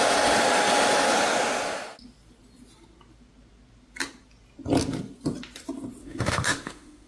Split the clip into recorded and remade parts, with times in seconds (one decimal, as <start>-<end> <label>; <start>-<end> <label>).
0.0-6.0 recorded; 6.0-7.1 remade